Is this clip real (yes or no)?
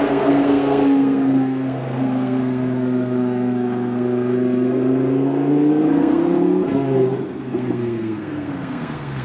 no